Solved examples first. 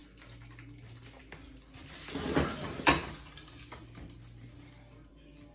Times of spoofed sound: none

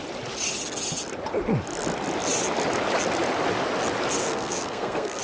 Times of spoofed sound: 4.2-5.2 (codec, SNAC)